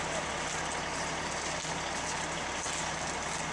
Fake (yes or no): no